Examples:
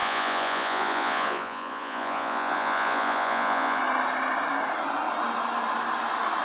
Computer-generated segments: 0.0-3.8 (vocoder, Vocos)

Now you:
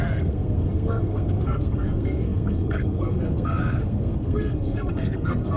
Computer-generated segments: 0.0-5.6 (codec, SNAC)

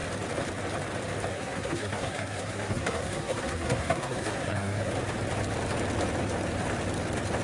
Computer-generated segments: 1.3-4.9 (codec, SNAC)